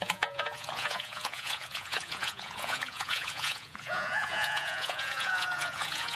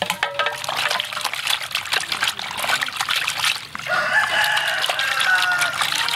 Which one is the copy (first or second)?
first